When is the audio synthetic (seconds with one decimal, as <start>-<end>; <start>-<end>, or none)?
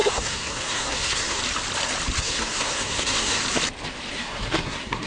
0.0-1.4; 2.2-3.4; 4.1-5.1